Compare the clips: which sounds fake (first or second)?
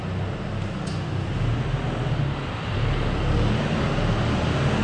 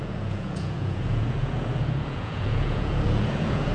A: second